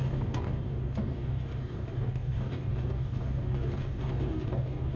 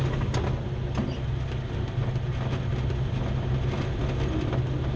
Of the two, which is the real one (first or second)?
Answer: second